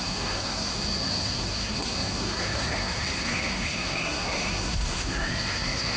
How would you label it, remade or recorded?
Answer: remade